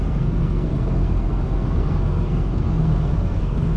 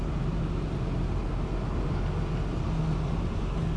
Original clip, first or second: second